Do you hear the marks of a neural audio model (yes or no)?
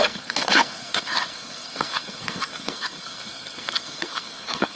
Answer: yes